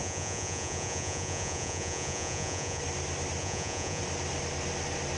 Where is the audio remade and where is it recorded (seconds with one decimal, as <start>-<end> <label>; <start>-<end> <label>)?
0.0-2.8 remade; 2.8-3.4 recorded; 3.4-4.0 remade; 4.0-5.2 recorded